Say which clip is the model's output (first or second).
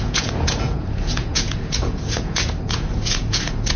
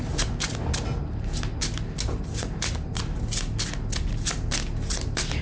first